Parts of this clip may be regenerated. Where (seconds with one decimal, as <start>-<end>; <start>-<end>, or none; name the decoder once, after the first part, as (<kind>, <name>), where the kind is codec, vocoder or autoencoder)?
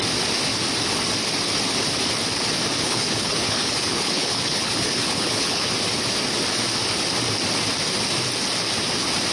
2.8-5.7 (codec, HILCodec)